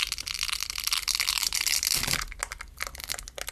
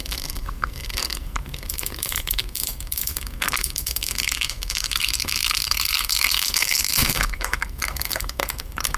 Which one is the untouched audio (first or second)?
first